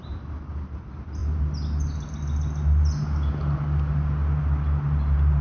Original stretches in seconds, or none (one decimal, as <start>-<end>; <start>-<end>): 0.0-5.4